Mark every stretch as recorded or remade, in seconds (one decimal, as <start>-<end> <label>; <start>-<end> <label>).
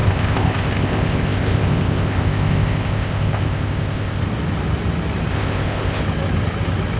0.0-4.2 remade; 4.2-5.3 recorded; 5.3-6.0 remade; 6.0-7.0 recorded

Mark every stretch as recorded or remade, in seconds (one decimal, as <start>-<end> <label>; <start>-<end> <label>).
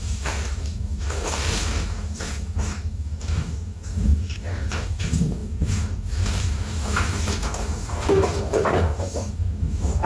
0.0-10.1 remade